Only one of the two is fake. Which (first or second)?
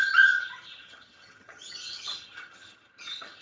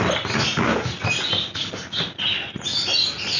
first